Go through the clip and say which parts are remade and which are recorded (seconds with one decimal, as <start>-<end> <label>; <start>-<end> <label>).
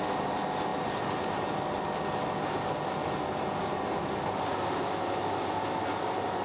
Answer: 0.0-6.4 recorded